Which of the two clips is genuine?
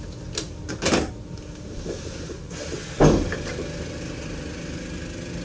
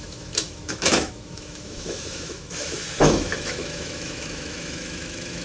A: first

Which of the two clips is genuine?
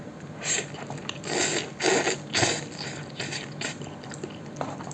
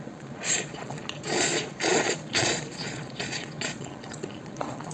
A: first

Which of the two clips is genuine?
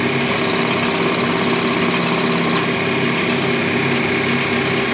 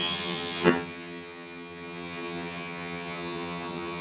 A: first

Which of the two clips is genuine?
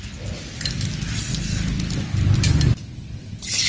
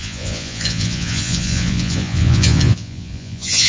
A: first